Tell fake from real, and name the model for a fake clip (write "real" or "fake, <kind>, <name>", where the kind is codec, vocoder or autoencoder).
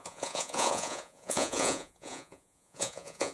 fake, vocoder, Vocos